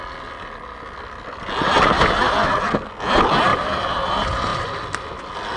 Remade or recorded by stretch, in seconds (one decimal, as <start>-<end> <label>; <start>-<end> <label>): 0.0-3.5 recorded; 3.5-4.1 remade; 4.1-4.5 recorded; 4.5-5.6 remade